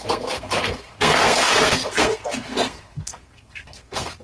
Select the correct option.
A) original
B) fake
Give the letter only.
B